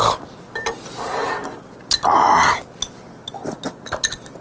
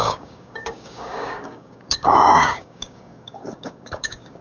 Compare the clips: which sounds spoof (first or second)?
second